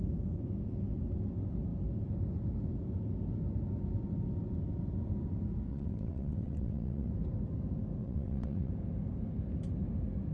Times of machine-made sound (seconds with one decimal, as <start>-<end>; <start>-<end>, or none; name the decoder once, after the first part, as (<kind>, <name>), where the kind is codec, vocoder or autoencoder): 5.7-7.1 (vocoder, WaveNeXt); 8.0-8.7